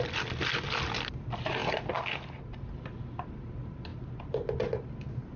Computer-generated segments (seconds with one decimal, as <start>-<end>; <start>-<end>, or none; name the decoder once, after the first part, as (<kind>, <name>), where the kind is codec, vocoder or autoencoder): none